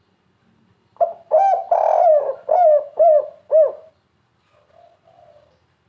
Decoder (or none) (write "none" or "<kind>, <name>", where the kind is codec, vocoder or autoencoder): none